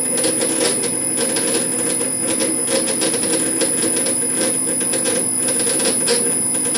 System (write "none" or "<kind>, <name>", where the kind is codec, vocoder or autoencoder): none